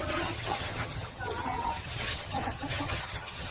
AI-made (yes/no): yes